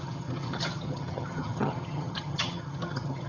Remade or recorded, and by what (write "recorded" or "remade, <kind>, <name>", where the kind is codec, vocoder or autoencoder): remade, vocoder, HiFi-GAN